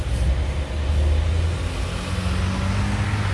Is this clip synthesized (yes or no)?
no